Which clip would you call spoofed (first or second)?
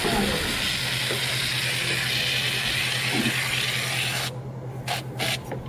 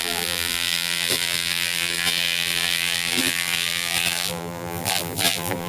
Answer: second